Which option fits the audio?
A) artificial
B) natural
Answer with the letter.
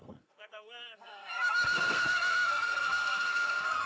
A